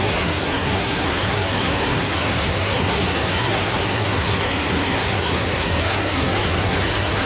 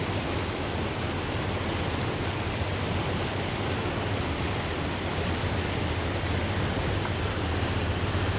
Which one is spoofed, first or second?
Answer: first